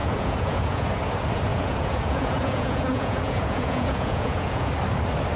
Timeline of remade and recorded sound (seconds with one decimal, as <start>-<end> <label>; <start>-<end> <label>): 0.0-0.9 remade; 0.9-1.5 recorded; 1.5-4.7 remade; 4.7-5.4 recorded